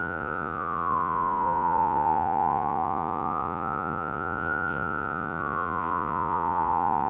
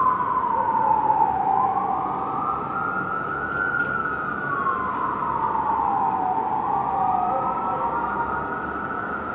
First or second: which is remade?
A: first